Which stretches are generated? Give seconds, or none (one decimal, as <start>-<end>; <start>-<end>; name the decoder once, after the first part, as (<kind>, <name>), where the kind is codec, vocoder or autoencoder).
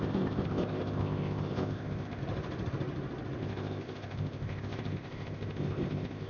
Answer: 0.0-2.2 (codec, ZipCodec); 3.4-6.3